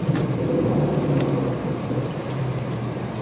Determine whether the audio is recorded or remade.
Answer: remade